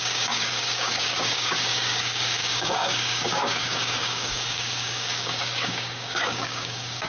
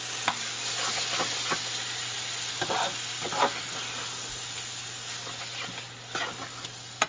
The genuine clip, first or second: second